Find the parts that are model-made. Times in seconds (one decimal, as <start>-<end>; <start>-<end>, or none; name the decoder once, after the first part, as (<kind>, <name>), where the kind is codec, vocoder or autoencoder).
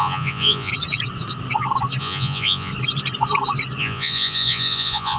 0.0-0.7 (vocoder, Vocos); 2.0-2.7; 3.8-5.2